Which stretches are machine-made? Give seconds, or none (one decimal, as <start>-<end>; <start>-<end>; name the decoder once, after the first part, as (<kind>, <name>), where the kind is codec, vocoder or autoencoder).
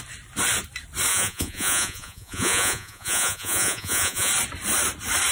1.1-4.3 (vocoder, Vocos)